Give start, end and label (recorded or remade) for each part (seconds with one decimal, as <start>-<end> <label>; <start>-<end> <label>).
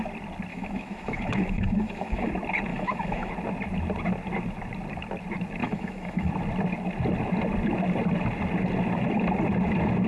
0.0-0.5 recorded; 0.5-2.3 remade; 2.3-2.7 recorded; 2.7-3.3 remade; 3.3-5.6 recorded; 5.6-6.3 remade; 6.3-10.1 recorded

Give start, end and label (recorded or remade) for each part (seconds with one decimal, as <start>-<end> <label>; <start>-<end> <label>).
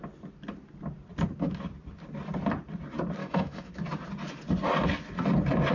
0.0-3.2 recorded; 3.2-3.7 remade; 3.7-5.7 recorded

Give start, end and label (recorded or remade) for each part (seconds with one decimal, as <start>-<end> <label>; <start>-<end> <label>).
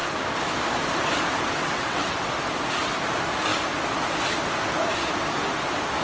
0.0-1.6 recorded; 1.6-2.3 remade; 2.3-6.0 recorded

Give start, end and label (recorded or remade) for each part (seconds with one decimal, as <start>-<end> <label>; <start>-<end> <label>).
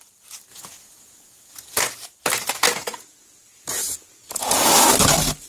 0.0-0.5 recorded; 0.5-1.8 remade; 1.8-2.8 recorded; 2.8-4.7 remade; 4.7-5.5 recorded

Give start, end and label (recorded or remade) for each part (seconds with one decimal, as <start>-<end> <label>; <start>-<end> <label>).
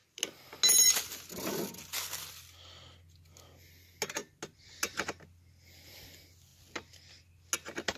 0.0-8.0 recorded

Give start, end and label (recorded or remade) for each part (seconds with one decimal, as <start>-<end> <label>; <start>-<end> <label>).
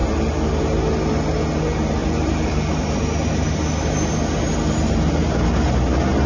0.0-0.6 remade; 0.6-2.0 recorded; 2.0-2.7 remade; 2.7-6.3 recorded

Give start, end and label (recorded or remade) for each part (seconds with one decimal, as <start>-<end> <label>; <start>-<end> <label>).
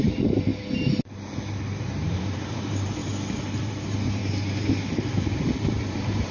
0.0-0.5 remade; 0.5-1.8 recorded; 1.8-3.0 remade; 3.0-3.6 recorded; 3.6-4.2 remade; 4.2-5.1 recorded; 5.1-6.3 remade